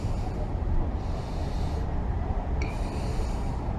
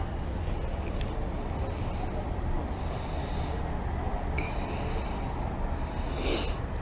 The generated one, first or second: first